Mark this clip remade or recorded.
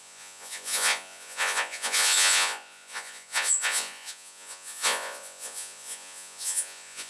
remade